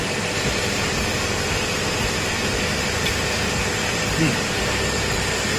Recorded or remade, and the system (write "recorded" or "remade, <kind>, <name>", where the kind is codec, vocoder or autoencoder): remade, vocoder, BigVGAN v2